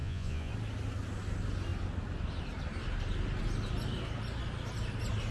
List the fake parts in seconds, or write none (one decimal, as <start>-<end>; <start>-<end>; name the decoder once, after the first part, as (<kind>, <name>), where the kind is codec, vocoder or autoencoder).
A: 0.0-0.5 (vocoder, Vocos)